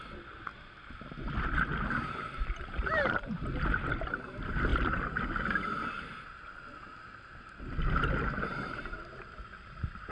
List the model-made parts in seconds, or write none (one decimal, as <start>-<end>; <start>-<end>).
0.5-3.9